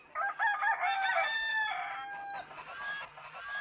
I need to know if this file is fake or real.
real